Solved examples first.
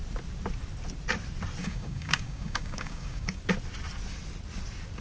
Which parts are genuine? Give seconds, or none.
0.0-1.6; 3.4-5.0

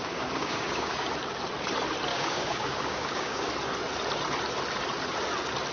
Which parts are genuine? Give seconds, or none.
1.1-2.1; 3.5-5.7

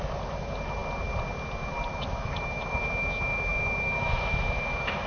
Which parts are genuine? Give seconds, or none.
0.0-1.9

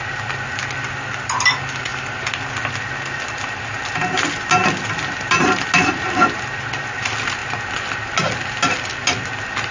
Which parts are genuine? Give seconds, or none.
0.0-9.7